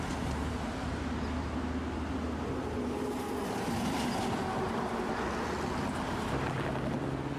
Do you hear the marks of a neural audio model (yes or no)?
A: no